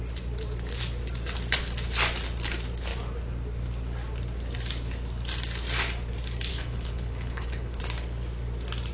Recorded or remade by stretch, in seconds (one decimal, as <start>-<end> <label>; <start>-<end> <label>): 0.0-6.5 recorded; 6.5-7.8 remade; 7.8-8.9 recorded